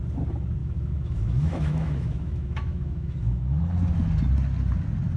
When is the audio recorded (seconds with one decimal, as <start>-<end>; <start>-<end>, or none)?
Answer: 0.0-0.6; 3.6-5.2